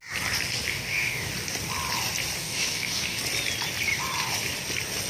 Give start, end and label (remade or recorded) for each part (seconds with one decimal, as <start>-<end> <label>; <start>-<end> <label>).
0.0-0.7 recorded; 0.7-1.3 remade; 1.3-2.4 recorded; 2.4-3.2 remade; 3.2-5.1 recorded